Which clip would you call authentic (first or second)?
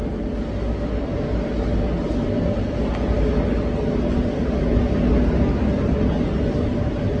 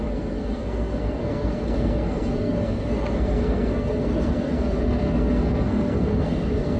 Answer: first